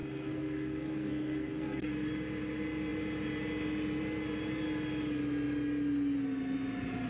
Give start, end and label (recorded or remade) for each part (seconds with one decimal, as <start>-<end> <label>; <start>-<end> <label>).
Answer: 0.0-1.9 remade; 1.9-7.1 recorded